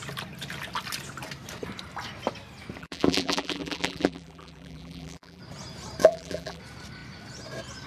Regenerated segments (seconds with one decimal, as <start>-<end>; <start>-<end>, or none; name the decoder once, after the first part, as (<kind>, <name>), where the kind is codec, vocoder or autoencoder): 2.8-5.4 (vocoder, BigVGAN v2); 6.0-6.6